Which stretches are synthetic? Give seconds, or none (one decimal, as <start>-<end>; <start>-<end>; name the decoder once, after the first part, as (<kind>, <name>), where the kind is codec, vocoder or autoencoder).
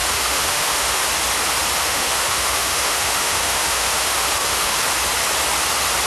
0.0-1.0 (autoencoder, DAC-VAE); 1.8-4.8